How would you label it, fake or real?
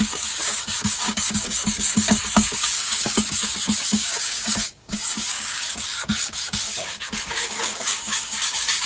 fake